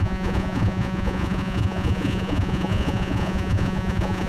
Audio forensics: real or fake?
fake